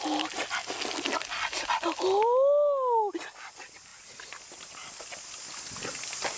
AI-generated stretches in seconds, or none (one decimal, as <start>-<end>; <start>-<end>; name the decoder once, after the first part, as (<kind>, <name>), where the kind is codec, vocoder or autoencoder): none